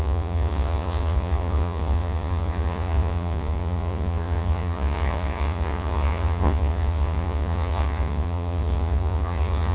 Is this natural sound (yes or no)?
no